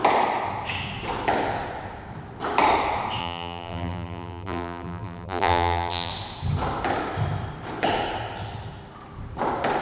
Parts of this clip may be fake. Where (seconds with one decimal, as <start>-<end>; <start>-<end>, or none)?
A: 3.2-6.1